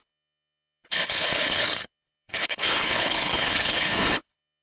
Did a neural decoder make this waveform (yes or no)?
yes